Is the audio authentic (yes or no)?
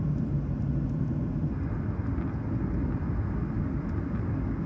yes